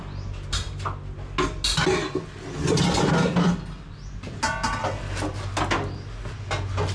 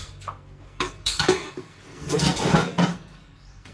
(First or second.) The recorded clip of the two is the first